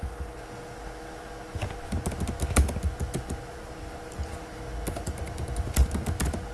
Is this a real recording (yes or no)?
yes